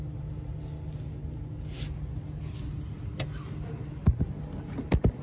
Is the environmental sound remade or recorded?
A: recorded